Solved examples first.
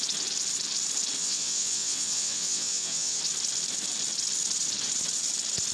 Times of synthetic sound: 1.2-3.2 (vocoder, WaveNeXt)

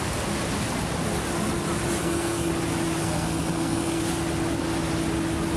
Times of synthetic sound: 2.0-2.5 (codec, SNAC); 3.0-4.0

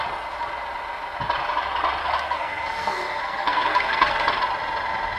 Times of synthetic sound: 2.0-4.4 (codec, SNAC)